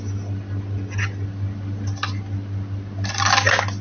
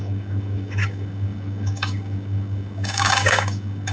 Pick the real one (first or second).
first